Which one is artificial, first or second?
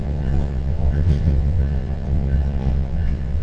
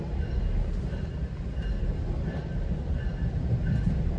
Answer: first